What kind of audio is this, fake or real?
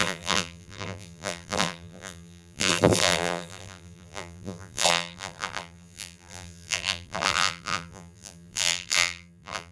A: fake